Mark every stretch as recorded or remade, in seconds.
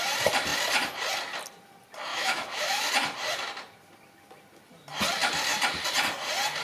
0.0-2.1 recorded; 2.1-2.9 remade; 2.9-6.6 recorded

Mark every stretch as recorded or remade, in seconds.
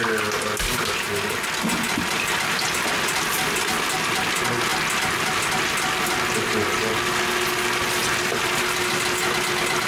0.0-9.9 recorded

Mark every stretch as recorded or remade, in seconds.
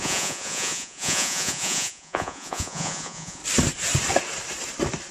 0.0-3.4 remade; 3.4-5.1 recorded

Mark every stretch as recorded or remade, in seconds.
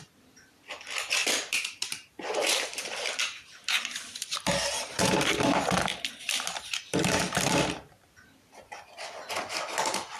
0.0-1.2 recorded; 1.2-5.2 remade; 5.2-10.2 recorded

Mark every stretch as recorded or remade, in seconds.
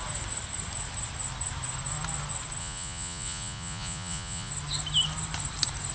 0.0-2.6 recorded; 2.6-4.5 remade; 4.5-5.9 recorded